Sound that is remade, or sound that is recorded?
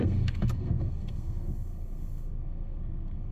remade